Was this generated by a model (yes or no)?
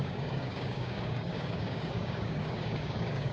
yes